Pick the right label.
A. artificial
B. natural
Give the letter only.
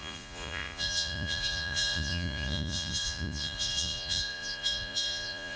A